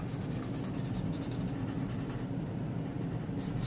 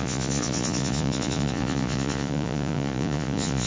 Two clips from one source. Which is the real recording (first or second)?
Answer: first